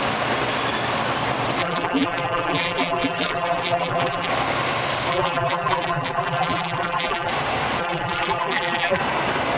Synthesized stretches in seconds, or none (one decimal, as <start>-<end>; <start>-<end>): 1.6-4.3; 5.1-7.3; 7.8-9.0